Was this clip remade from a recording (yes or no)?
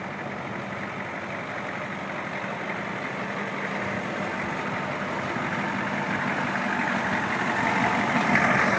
no